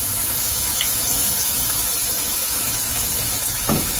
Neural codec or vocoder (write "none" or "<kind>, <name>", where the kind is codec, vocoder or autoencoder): autoencoder, DAC-VAE